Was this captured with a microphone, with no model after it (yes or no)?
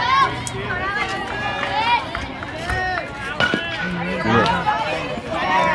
yes